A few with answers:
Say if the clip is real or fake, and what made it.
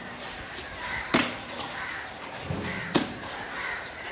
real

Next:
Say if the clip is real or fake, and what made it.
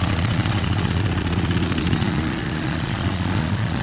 fake, vocoder, Vocos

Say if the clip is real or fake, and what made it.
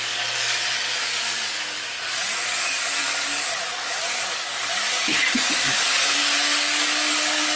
fake, codec, DAC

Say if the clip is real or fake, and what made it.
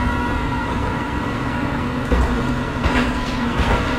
fake, codec, SNAC